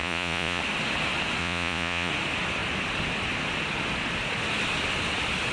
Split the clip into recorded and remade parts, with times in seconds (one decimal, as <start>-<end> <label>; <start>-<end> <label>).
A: 0.0-0.6 remade; 0.6-1.4 recorded; 1.4-2.1 remade; 2.1-5.5 recorded